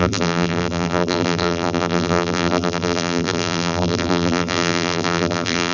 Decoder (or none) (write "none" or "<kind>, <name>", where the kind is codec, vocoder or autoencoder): vocoder, BigVGAN v2